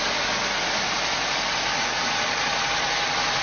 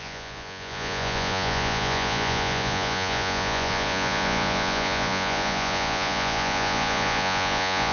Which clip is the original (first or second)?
first